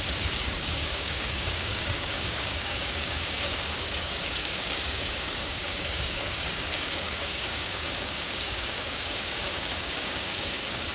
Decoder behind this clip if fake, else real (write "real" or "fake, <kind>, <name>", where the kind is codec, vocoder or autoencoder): fake, codec, DAC